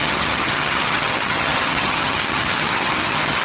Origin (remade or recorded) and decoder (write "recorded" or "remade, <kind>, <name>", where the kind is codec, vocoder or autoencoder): remade, vocoder, HiFi-GAN